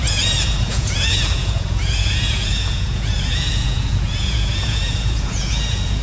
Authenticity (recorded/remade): remade